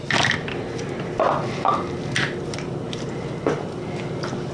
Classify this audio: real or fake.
real